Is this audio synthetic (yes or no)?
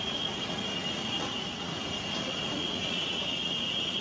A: yes